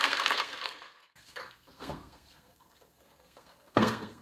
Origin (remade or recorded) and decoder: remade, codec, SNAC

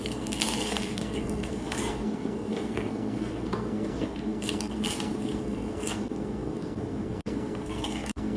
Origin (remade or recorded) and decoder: remade, codec, SNAC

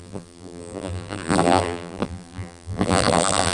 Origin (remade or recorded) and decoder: remade, vocoder, BigVGAN v2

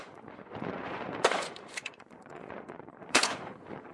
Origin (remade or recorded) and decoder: remade, vocoder, Vocos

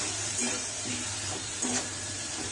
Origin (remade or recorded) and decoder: remade, vocoder, BigVGAN v2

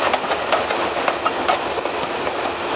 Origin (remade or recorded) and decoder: recorded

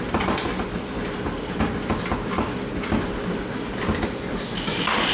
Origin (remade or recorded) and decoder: recorded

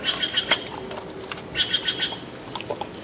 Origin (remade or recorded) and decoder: recorded